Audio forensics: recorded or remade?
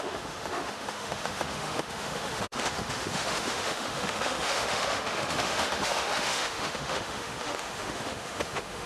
remade